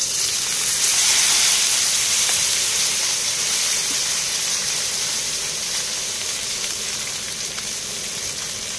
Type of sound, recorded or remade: remade